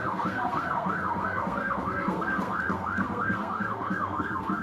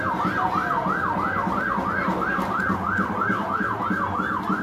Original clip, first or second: second